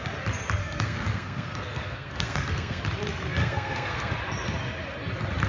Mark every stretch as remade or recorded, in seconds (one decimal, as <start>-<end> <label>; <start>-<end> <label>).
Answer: 0.0-0.6 recorded; 0.6-2.8 remade; 2.8-3.4 recorded; 3.4-4.1 remade; 4.1-5.5 recorded